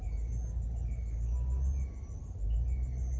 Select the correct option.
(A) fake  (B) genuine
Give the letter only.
B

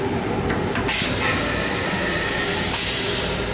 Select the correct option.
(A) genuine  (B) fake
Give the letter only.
B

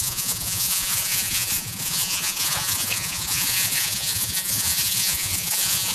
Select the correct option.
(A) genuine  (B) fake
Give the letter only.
B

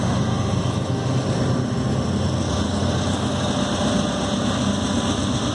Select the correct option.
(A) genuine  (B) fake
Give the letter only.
A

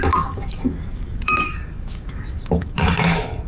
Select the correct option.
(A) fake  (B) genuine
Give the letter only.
A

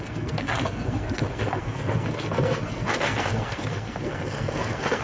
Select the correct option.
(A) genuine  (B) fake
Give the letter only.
B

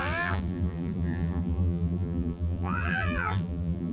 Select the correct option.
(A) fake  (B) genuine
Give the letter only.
A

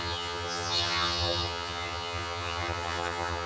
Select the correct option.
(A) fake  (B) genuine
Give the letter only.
A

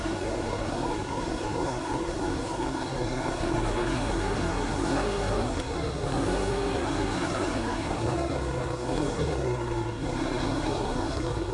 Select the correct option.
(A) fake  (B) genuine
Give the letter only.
A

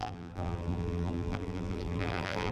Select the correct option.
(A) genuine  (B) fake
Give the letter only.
B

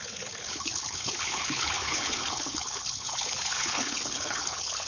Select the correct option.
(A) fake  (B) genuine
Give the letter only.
A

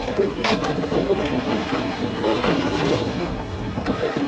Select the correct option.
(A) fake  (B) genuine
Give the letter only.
A